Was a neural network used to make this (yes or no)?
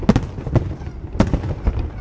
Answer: no